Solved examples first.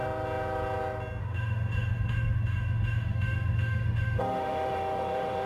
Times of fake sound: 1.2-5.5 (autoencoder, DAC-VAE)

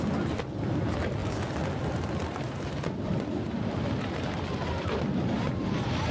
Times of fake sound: none